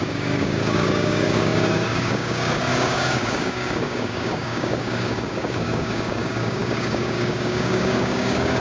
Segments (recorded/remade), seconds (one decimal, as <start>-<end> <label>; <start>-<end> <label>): 0.0-8.6 remade